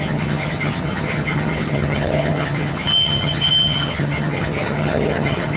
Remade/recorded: remade